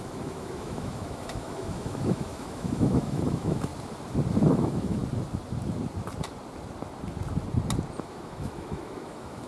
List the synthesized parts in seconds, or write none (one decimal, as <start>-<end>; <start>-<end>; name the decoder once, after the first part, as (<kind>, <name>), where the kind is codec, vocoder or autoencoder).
0.0-3.7 (autoencoder, DAC-VAE); 4.5-5.0; 8.0-9.5

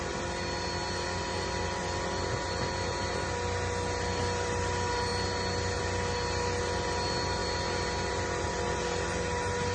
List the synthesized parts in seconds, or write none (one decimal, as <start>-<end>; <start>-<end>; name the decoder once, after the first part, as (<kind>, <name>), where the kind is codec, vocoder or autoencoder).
none

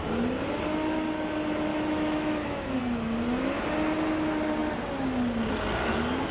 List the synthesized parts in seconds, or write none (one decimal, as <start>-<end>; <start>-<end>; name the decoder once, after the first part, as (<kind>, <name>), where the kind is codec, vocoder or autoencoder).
1.7-2.8 (autoencoder, DAC-VAE)